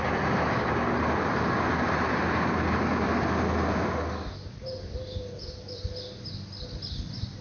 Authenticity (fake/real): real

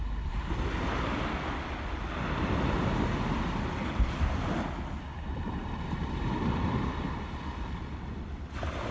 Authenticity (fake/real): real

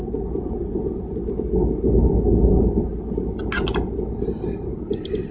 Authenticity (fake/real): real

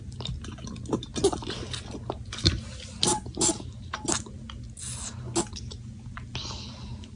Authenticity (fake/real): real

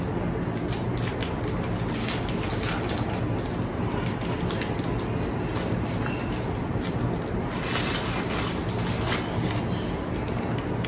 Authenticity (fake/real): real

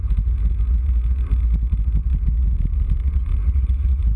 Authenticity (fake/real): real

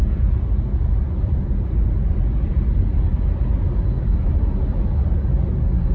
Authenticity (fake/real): real